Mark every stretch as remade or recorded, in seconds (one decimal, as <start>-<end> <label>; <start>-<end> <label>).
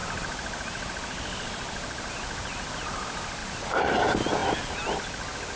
0.0-5.6 recorded